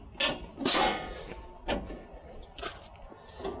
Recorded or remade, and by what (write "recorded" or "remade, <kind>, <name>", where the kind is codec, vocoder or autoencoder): recorded